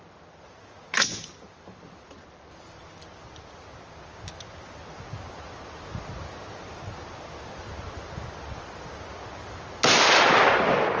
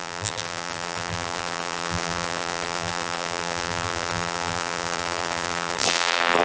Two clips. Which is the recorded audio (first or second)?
first